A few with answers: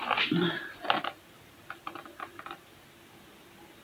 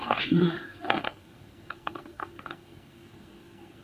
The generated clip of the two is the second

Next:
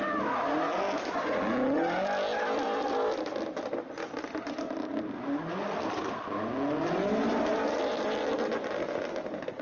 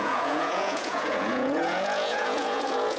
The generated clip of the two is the second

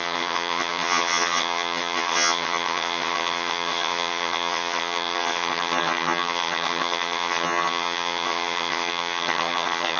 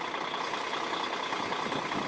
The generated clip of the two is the first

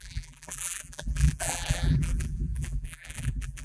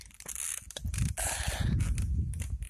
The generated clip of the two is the first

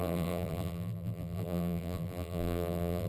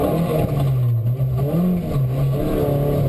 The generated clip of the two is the first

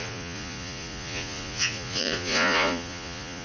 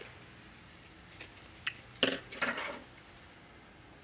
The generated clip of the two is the first